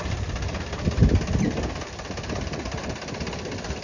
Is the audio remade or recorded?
recorded